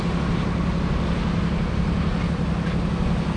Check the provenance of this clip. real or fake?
real